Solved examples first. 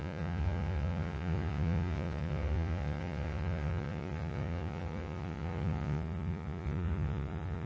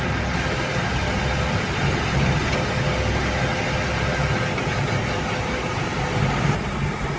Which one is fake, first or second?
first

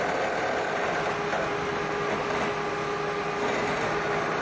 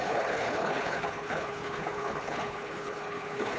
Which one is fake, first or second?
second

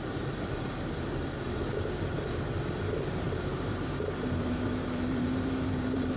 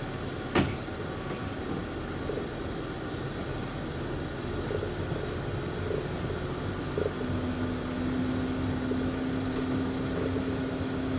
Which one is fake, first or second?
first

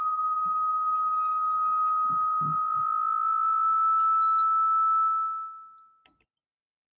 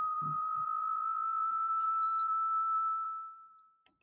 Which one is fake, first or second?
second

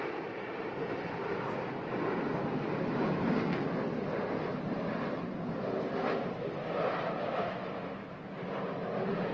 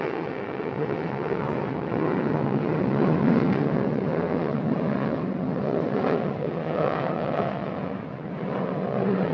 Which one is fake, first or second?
second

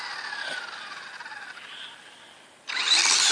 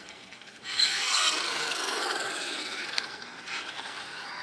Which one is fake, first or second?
second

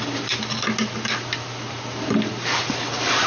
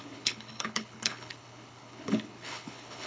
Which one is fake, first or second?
second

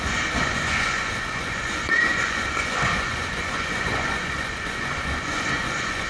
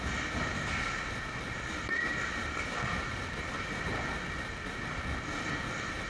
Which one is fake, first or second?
first